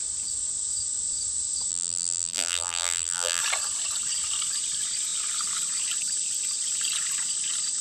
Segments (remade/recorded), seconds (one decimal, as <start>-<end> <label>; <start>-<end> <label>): 0.0-1.7 recorded; 1.7-3.4 remade; 3.4-7.8 recorded